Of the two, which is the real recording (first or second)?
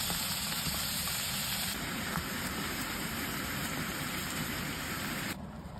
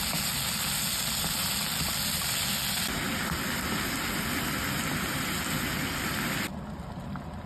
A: second